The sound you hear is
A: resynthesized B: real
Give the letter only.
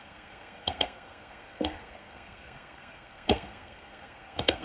A